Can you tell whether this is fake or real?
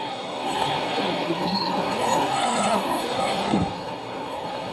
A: fake